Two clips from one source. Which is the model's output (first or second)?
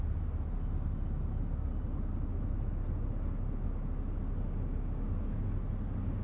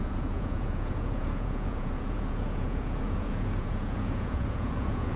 second